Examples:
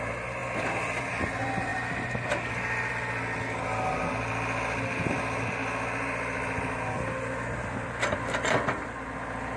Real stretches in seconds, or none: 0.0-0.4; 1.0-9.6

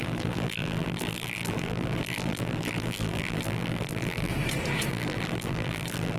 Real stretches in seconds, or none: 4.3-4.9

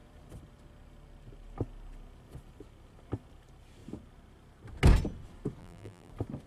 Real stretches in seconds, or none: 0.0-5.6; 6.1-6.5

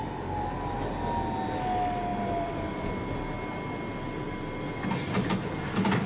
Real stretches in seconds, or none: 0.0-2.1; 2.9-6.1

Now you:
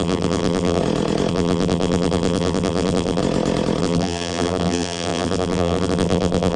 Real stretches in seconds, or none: 0.8-1.3; 3.2-3.8